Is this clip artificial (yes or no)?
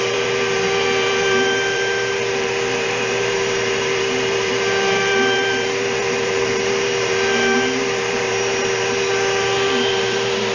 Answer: yes